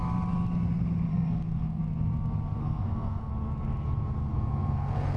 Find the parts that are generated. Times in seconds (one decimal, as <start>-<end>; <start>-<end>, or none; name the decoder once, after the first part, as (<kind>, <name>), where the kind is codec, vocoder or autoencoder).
1.1-1.8 (codec, SNAC); 2.6-3.3; 4.2-5.2